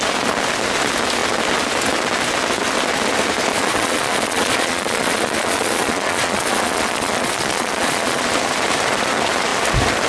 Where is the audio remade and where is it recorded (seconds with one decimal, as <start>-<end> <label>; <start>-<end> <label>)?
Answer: 0.0-3.5 recorded; 3.5-8.2 remade; 8.2-10.1 recorded

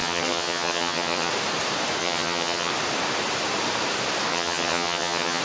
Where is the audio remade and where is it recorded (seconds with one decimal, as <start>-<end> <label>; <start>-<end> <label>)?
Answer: 0.0-1.3 remade; 1.3-2.0 recorded; 2.0-2.7 remade; 2.7-4.3 recorded; 4.3-5.4 remade

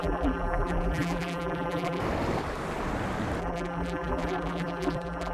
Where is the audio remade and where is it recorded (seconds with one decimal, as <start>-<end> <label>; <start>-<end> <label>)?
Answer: 0.0-2.0 remade; 2.0-3.4 recorded; 3.4-5.3 remade

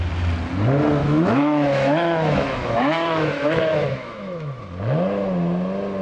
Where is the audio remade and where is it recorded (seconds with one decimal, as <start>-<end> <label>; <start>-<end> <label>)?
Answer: 0.0-1.0 recorded; 1.0-4.6 remade; 4.6-6.0 recorded

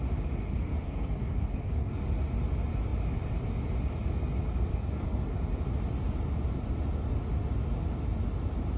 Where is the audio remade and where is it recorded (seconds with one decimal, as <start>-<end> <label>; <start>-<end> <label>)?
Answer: 0.0-0.5 recorded; 0.5-1.9 remade; 1.9-4.7 recorded; 4.7-5.3 remade; 5.3-8.8 recorded

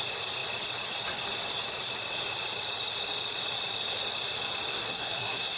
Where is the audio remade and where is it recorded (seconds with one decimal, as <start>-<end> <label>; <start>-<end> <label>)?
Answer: 0.0-4.7 recorded; 4.7-5.6 remade

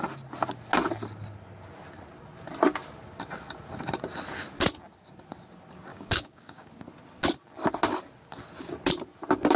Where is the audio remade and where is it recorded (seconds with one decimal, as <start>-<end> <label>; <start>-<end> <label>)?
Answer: 0.0-5.9 recorded; 5.9-6.7 remade; 6.7-9.6 recorded